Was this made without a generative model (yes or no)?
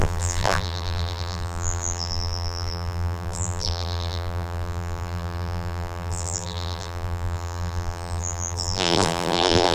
no